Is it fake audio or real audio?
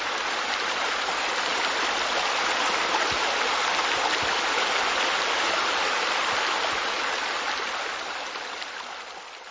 real